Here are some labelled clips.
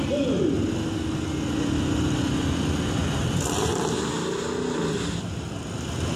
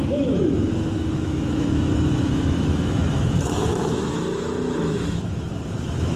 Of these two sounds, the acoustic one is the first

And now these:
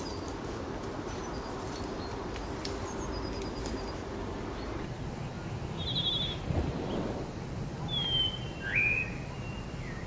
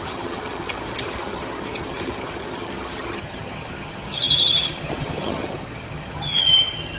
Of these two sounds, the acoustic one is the first